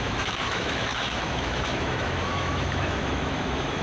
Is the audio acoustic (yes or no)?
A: no